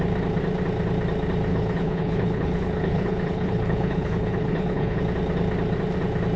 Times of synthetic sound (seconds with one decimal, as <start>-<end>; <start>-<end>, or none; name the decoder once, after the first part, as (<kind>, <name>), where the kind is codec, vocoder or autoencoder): 1.5-5.0 (codec, HILCodec)